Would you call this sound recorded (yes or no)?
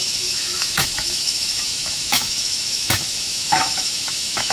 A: no